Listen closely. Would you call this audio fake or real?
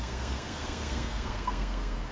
fake